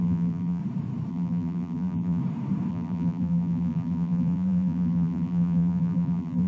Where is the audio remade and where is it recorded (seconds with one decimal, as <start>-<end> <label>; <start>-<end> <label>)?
0.0-0.6 remade; 0.6-1.1 recorded; 1.1-2.2 remade; 2.2-2.7 recorded; 2.7-6.5 remade